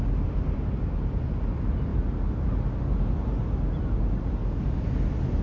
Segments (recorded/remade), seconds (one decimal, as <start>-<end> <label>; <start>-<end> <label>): 0.0-5.4 recorded